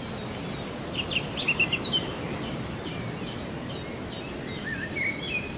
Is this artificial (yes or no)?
no